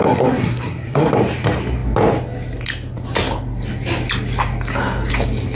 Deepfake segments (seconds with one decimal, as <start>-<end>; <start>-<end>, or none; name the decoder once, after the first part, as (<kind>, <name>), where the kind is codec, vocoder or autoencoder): 0.0-1.1 (codec, SNAC)